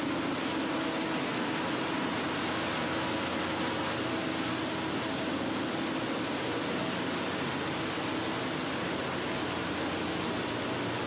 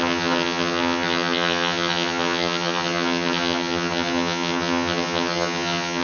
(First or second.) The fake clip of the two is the second